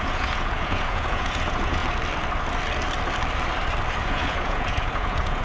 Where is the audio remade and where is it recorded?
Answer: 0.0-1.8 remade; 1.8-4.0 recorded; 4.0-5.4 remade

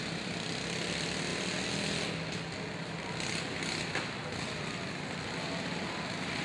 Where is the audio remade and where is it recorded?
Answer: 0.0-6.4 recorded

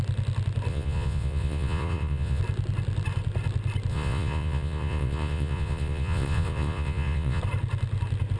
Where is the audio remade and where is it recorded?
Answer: 0.0-0.7 recorded; 0.7-2.4 remade; 2.4-3.9 recorded; 3.9-7.4 remade; 7.4-8.4 recorded

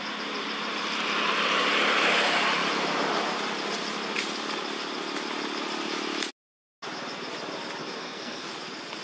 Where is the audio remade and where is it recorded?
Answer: 0.0-7.8 recorded; 7.8-8.5 remade; 8.5-9.0 recorded

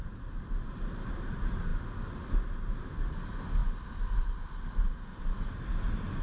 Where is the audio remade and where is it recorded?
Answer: 0.0-6.2 recorded

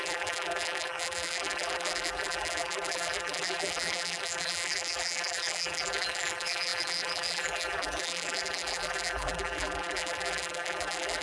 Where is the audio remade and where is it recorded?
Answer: 0.0-11.2 remade

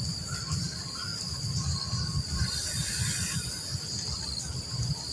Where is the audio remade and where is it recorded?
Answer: 0.0-5.1 recorded